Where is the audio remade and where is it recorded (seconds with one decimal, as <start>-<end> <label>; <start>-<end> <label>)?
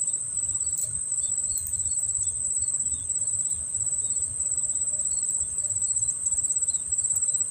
0.0-7.5 recorded